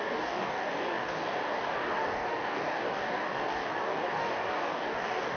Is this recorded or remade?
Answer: remade